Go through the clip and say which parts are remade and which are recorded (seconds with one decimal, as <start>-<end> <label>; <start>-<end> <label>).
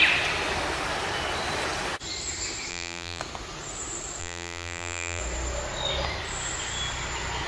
0.0-2.7 recorded; 2.7-3.2 remade; 3.2-4.2 recorded; 4.2-5.2 remade; 5.2-7.5 recorded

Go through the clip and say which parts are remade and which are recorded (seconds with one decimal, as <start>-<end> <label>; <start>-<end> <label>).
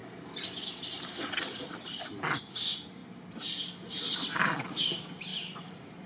0.0-2.4 remade; 2.4-3.0 recorded; 3.0-3.7 remade; 3.7-5.3 recorded; 5.3-6.1 remade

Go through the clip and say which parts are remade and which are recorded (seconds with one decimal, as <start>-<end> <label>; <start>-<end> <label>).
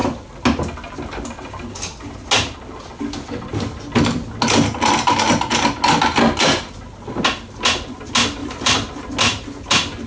0.0-8.4 recorded; 8.4-9.0 remade; 9.0-10.1 recorded